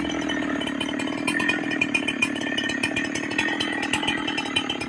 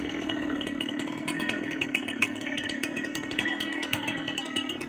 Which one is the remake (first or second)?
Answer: second